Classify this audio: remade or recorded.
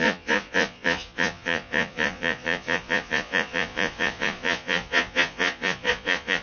remade